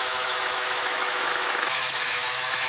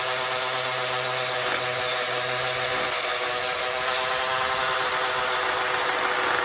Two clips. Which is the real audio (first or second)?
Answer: second